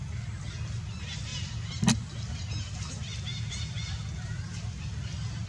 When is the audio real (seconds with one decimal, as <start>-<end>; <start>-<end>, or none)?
0.0-5.5